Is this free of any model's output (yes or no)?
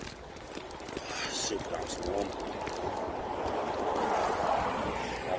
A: yes